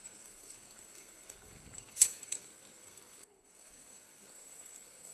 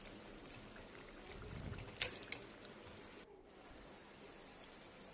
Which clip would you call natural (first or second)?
second